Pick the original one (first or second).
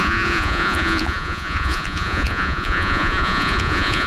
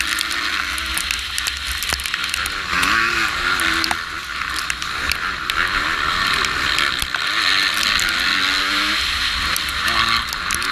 second